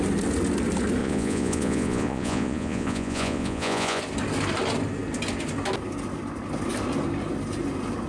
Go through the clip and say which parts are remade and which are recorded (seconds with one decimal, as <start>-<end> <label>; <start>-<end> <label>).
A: 0.0-1.0 recorded; 1.0-4.0 remade; 4.0-8.1 recorded